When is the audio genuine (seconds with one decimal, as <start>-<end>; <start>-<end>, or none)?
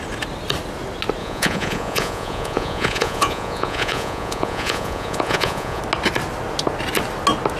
0.0-1.2; 5.8-7.6